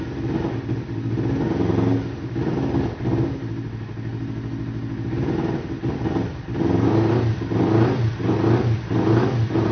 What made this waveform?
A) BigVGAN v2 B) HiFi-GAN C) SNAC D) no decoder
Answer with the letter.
D